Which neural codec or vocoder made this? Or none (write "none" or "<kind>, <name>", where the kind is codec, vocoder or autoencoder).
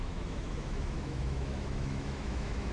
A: autoencoder, DAC-VAE